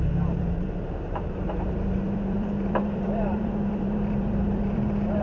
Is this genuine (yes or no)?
no